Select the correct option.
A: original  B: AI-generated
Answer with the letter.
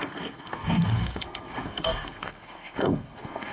B